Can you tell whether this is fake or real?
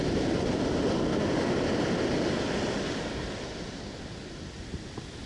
real